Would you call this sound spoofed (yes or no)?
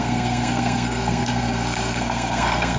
yes